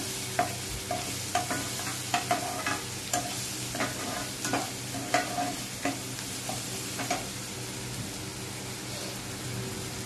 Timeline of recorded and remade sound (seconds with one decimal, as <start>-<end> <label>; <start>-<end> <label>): 0.0-10.1 recorded